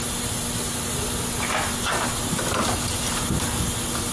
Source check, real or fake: real